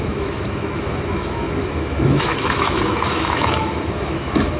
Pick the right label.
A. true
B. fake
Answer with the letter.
B